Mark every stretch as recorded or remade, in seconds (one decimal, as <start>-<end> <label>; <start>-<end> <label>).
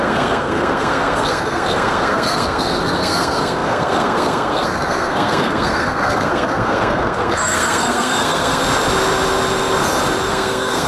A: 0.0-8.6 remade; 8.6-10.3 recorded; 10.3-10.9 remade